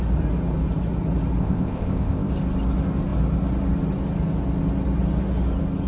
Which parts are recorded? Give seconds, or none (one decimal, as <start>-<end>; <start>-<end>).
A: 0.0-1.4; 2.3-5.9